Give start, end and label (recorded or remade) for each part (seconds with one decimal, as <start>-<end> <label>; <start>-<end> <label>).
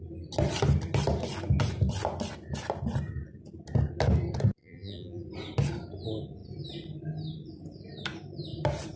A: 0.0-4.6 recorded; 4.6-5.2 remade; 5.2-9.0 recorded